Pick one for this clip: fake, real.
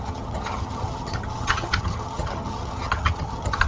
fake